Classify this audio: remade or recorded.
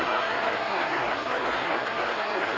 remade